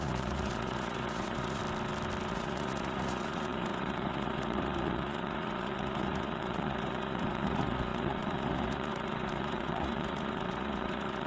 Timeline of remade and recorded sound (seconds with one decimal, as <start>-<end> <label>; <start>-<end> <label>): 0.0-1.6 remade; 1.6-2.3 recorded; 2.3-11.3 remade